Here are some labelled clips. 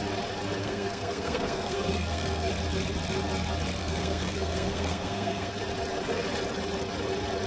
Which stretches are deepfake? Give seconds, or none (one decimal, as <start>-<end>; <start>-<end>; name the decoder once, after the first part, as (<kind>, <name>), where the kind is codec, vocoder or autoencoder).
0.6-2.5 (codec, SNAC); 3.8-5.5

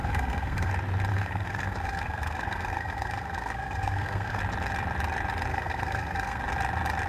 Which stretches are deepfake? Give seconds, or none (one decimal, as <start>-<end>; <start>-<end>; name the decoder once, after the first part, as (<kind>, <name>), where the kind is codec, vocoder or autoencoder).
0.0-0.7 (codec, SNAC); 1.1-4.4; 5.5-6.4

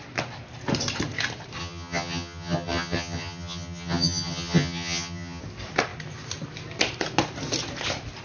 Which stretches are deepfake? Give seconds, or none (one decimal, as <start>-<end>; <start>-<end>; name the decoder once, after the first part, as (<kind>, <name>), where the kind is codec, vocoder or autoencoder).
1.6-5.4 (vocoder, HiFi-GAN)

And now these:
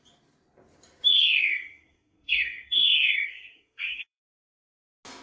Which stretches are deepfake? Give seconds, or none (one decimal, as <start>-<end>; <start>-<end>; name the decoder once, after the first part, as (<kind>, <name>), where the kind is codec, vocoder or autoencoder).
1.1-4.2 (codec, SNAC)